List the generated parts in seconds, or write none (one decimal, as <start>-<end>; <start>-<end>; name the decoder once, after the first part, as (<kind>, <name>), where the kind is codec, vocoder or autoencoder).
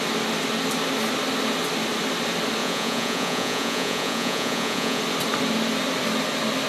2.6-5.0 (vocoder, Vocos)